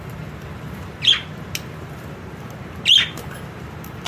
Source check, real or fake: real